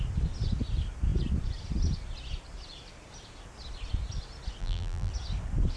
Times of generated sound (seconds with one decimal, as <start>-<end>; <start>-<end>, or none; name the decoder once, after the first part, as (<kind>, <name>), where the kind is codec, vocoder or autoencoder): 4.6-5.1 (vocoder, BigVGAN v2)